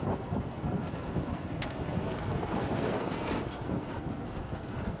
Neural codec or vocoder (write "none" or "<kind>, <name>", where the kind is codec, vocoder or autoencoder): codec, SNAC